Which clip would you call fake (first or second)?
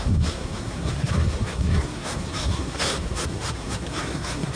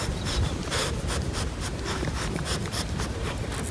first